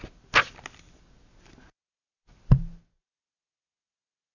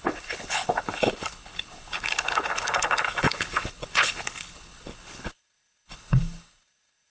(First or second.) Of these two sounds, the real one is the first